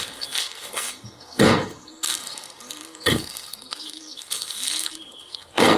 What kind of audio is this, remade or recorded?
remade